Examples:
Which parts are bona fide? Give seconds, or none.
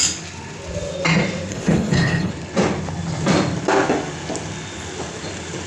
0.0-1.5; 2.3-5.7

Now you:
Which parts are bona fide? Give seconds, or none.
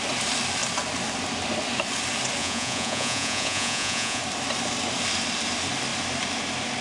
0.0-2.4; 4.2-6.8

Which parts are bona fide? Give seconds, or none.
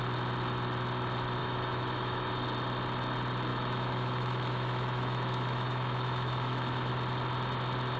0.0-1.4; 2.3-3.5; 6.9-8.0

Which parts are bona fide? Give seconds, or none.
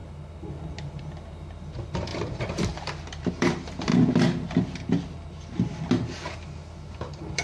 0.0-1.0; 3.9-6.9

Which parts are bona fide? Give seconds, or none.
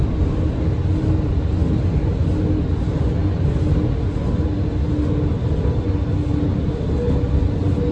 0.0-7.9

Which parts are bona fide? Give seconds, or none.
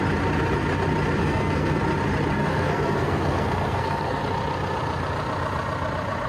0.0-1.2; 1.8-2.4; 4.2-6.3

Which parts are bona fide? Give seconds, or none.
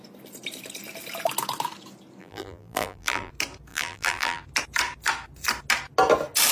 0.0-2.2; 3.3-3.7; 4.4-6.5